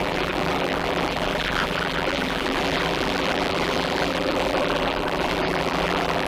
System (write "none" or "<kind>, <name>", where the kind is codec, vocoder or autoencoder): vocoder, BigVGAN v2